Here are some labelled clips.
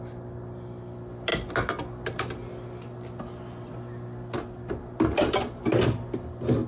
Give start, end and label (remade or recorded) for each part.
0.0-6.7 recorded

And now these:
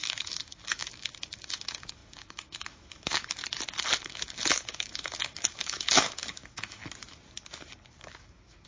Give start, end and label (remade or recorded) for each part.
0.0-3.4 remade; 3.4-4.0 recorded; 4.0-6.8 remade; 6.8-8.0 recorded; 8.0-8.7 remade

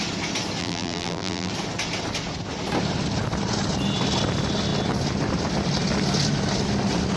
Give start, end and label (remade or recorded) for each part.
0.0-0.6 recorded; 0.6-1.5 remade; 1.5-7.2 recorded

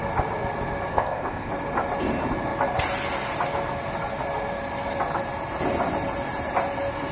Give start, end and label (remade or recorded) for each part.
0.0-0.9 recorded; 0.9-1.5 remade; 1.5-7.1 recorded

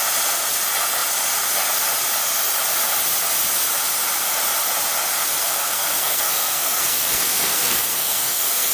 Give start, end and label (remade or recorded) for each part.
0.0-5.4 recorded; 5.4-8.7 remade